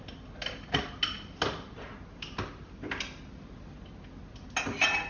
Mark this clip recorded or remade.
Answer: recorded